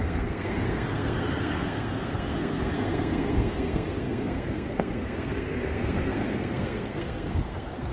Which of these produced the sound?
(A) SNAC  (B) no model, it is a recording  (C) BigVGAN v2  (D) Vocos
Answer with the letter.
A